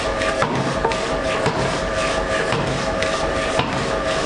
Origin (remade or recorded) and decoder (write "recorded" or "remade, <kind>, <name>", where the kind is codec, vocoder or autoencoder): remade, codec, DAC